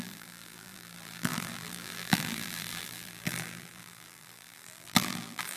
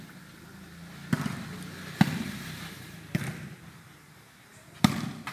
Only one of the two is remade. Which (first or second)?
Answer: first